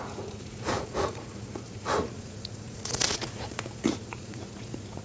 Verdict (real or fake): fake